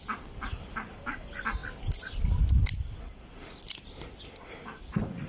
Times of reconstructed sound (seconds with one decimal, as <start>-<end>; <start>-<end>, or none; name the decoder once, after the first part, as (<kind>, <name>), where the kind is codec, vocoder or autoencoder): none